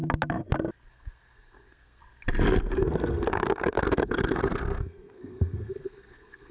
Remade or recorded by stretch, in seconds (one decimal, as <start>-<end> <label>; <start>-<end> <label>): 0.0-0.9 recorded; 0.9-2.0 remade; 2.0-2.7 recorded; 2.7-6.5 remade